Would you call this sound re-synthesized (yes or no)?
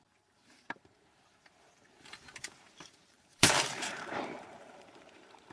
yes